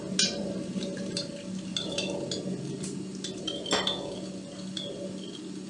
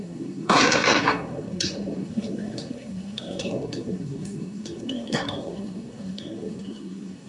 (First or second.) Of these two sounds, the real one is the first